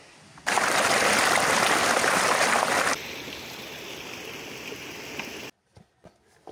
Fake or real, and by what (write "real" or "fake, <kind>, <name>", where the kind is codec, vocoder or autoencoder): real